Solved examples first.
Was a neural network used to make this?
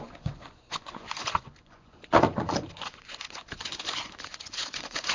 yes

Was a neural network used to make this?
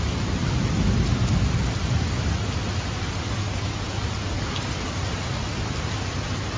no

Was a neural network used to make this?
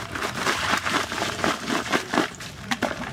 yes